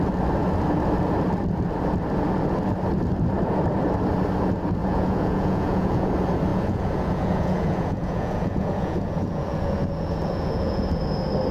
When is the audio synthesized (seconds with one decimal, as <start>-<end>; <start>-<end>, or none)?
4.8-6.1; 6.5-11.0